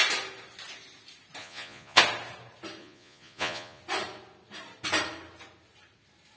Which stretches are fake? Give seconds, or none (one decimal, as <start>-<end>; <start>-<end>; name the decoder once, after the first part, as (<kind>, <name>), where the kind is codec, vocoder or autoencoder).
1.4-2.0 (vocoder, Vocos); 2.8-3.8

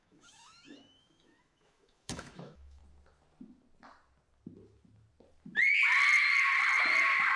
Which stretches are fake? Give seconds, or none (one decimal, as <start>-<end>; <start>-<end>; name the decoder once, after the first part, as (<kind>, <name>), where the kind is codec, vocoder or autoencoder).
0.0-2.8 (autoencoder, DAC-VAE)

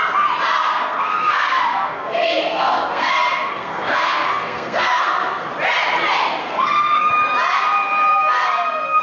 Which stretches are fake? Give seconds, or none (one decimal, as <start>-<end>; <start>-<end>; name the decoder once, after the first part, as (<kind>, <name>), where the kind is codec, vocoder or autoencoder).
0.7-5.5 (codec, SNAC); 6.4-7.1; 8.1-9.0